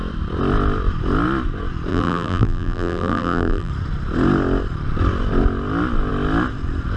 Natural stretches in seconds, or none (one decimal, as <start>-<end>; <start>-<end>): 0.0-1.9; 3.7-7.0